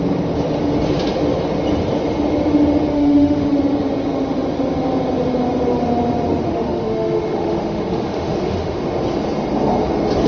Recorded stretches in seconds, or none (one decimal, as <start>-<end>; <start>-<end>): 0.0-2.9; 3.6-6.5; 8.8-10.3